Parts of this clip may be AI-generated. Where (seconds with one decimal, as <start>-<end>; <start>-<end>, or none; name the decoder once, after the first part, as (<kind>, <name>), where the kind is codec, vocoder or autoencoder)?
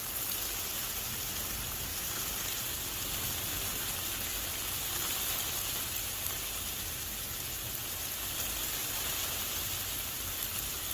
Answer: 1.9-3.0 (vocoder, BigVGAN v2); 8.8-9.4